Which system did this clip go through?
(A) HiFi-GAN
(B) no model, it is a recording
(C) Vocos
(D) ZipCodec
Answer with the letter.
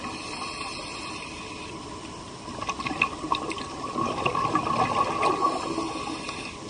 B